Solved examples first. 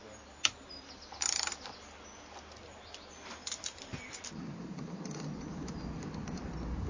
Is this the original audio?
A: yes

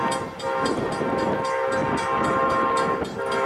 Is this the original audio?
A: yes